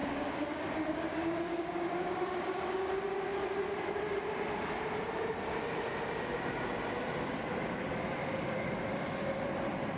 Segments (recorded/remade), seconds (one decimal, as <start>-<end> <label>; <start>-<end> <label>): 0.0-2.9 remade; 2.9-7.5 recorded; 7.5-8.7 remade; 8.7-10.0 recorded

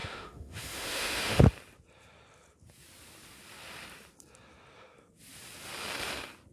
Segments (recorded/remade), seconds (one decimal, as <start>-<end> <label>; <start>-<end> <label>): 0.0-1.4 remade; 1.4-6.5 recorded

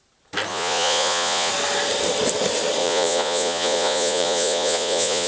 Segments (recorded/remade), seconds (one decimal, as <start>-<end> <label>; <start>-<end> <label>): 0.0-0.5 recorded; 0.5-1.5 remade; 1.5-2.8 recorded; 2.8-5.3 remade

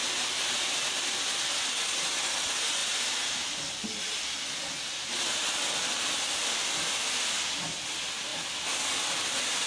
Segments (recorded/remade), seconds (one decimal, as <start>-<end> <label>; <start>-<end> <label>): 0.0-1.4 remade; 1.4-8.3 recorded; 8.3-9.7 remade